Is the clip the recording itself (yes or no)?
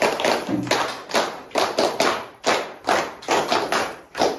yes